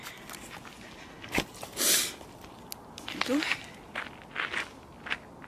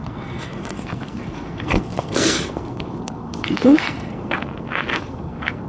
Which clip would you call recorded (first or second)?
first